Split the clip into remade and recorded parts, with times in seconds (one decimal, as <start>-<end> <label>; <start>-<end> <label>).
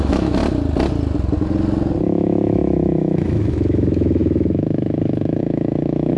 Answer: 0.0-0.4 remade; 0.4-2.0 recorded; 2.0-6.2 remade